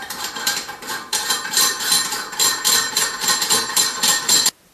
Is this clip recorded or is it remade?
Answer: remade